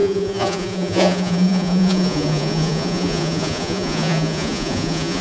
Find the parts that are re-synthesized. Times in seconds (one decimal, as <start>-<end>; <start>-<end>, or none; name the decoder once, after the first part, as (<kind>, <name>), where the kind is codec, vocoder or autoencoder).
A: 0.0-5.2 (vocoder, Vocos)